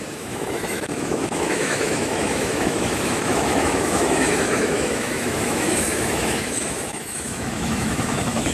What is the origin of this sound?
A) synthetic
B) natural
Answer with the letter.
A